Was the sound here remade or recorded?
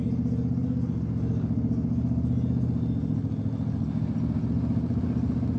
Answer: recorded